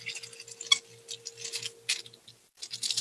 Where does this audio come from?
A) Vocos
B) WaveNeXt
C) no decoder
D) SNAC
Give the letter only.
C